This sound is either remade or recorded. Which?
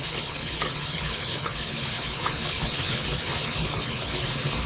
remade